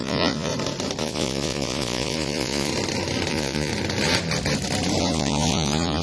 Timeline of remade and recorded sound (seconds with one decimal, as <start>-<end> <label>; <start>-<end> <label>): 0.0-0.5 remade; 0.5-1.0 recorded; 1.0-2.7 remade; 2.7-3.3 recorded; 3.3-3.7 remade; 3.7-5.0 recorded; 5.0-6.0 remade